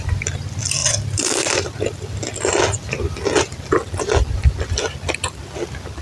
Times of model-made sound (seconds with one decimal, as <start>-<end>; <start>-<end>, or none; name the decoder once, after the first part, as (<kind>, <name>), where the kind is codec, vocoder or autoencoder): 0.8-1.7 (vocoder, BigVGAN v2)